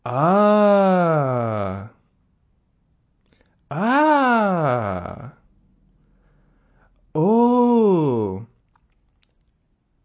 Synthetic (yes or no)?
no